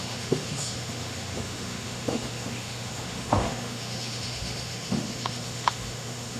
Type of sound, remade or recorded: remade